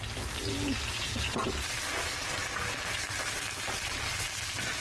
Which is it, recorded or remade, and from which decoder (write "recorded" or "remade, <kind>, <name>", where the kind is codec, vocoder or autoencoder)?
recorded